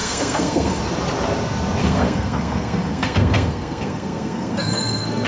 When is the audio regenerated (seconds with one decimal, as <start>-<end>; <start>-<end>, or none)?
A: 0.0-0.8; 1.8-5.3